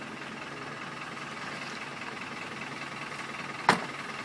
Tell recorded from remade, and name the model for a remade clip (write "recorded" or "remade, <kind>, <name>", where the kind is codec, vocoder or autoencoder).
recorded